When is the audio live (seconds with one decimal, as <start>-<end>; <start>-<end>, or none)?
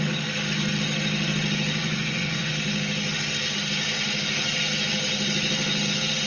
0.0-1.8; 2.5-6.3